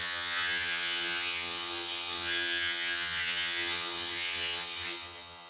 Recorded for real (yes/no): no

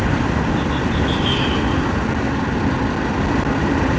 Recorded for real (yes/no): yes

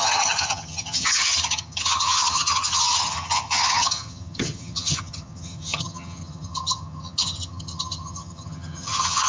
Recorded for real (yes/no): no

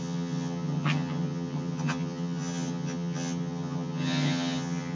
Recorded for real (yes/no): no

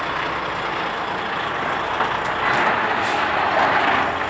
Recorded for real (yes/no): yes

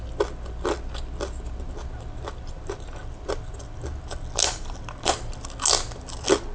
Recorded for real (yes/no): yes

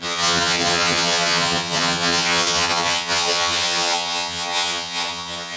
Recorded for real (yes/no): no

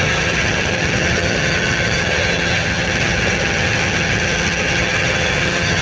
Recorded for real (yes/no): no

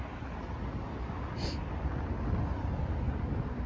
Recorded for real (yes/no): yes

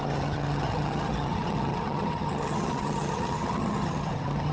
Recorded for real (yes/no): no